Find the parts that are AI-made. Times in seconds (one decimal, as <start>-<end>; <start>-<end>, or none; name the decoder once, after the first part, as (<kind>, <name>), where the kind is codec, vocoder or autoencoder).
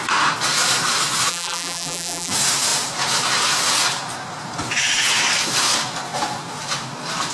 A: 1.3-2.3 (vocoder, BigVGAN v2)